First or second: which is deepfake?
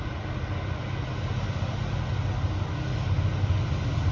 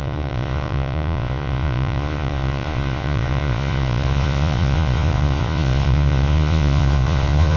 second